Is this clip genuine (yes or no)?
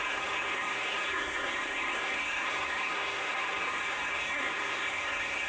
no